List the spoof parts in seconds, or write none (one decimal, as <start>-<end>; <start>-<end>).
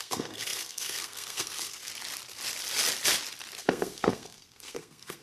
0.0-1.9; 3.6-5.2